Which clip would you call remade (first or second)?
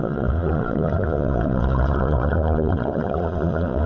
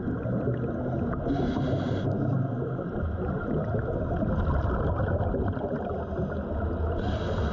first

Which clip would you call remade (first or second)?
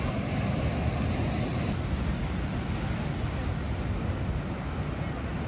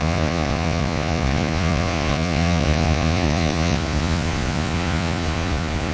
second